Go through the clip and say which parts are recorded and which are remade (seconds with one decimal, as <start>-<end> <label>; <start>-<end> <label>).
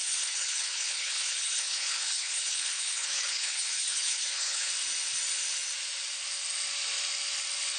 0.0-4.7 remade; 4.7-7.8 recorded